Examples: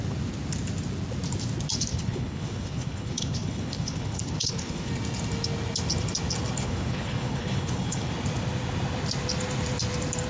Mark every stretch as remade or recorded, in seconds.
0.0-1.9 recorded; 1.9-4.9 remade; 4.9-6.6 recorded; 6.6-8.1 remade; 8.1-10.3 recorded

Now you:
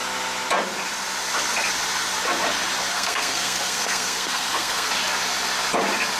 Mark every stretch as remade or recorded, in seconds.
0.0-2.9 recorded; 2.9-4.9 remade; 4.9-6.2 recorded

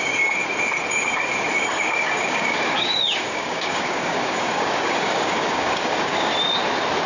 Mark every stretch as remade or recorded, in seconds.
0.0-0.4 remade; 0.4-1.7 recorded; 1.7-6.3 remade; 6.3-7.1 recorded

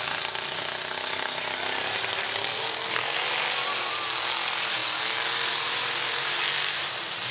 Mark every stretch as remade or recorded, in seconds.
0.0-2.4 recorded; 2.4-3.2 remade; 3.2-7.3 recorded